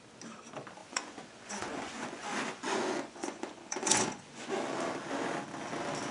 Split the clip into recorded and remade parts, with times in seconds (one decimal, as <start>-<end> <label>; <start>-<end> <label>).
0.0-0.8 recorded; 0.8-4.5 remade; 4.5-6.1 recorded